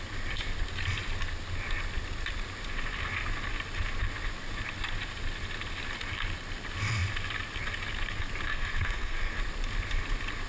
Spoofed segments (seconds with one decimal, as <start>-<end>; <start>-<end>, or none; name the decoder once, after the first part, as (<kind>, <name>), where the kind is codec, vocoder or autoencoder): 8.5-9.3 (codec, SNAC)